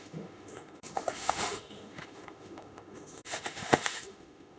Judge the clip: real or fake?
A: fake